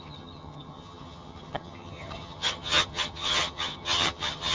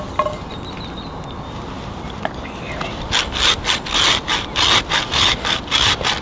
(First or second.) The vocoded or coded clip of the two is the first